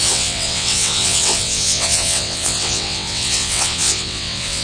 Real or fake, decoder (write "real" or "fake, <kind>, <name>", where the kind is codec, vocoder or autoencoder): fake, vocoder, WaveNeXt